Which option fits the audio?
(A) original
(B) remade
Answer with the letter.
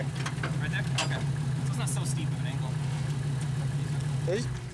A